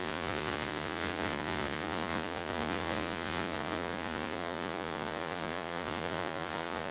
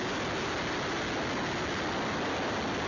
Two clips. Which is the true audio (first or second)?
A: second